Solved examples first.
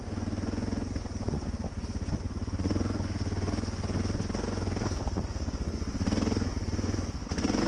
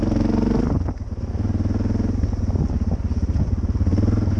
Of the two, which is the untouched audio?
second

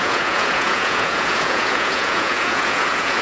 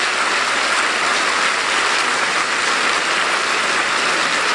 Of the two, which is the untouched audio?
second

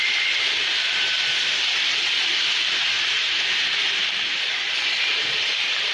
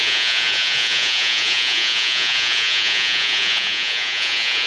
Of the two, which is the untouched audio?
first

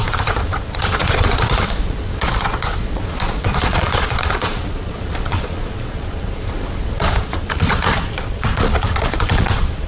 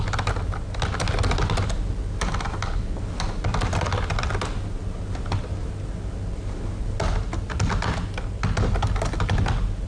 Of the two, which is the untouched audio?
second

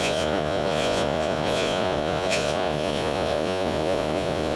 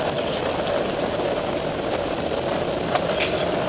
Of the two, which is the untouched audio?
second